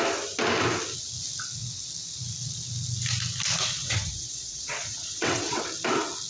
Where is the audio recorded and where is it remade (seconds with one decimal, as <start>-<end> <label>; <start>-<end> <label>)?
0.0-3.8 recorded; 3.8-5.6 remade; 5.6-6.3 recorded